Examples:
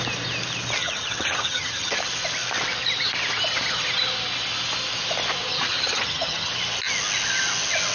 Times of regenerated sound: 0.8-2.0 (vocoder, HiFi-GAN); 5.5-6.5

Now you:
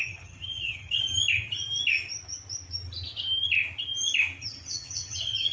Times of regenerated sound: 0.0-1.1 (vocoder, HiFi-GAN); 4.4-5.5

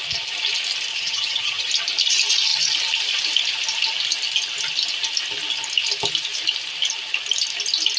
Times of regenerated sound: 0.9-1.7 (vocoder, HiFi-GAN)

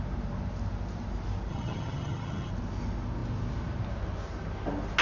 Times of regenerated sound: 1.5-2.5 (vocoder, HiFi-GAN)